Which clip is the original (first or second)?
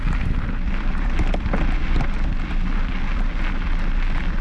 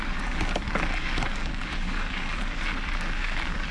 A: first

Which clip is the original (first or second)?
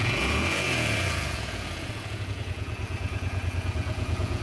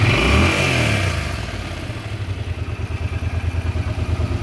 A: second